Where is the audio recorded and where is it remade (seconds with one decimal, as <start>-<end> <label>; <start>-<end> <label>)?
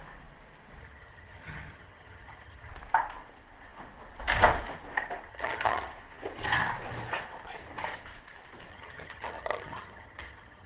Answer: 0.0-0.8 recorded; 0.8-2.7 remade; 2.7-5.3 recorded; 5.3-5.9 remade; 5.9-8.7 recorded; 8.7-10.7 remade